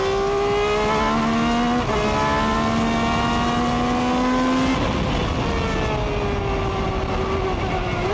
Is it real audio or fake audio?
real